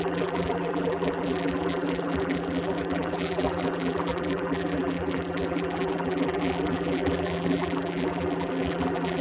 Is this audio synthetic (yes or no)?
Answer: yes